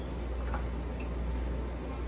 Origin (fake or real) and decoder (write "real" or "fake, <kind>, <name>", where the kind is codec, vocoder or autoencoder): real